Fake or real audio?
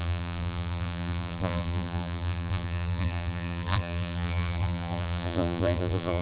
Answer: fake